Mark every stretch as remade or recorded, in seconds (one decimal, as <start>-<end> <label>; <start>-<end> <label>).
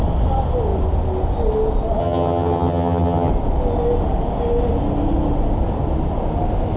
0.0-2.0 recorded; 2.0-3.3 remade; 3.3-6.8 recorded